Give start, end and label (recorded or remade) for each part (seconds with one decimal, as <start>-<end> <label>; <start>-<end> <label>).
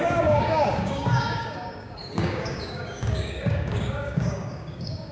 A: 0.0-5.1 remade